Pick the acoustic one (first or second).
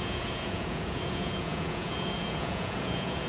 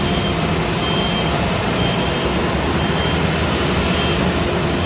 second